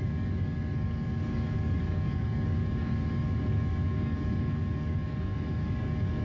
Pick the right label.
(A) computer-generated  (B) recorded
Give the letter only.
A